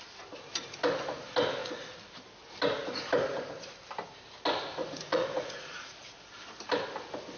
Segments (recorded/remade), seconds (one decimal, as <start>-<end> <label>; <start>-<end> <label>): 0.0-4.8 recorded; 4.8-6.2 remade; 6.2-7.4 recorded